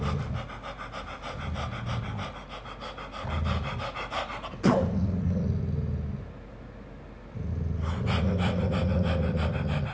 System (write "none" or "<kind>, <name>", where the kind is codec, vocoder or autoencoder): none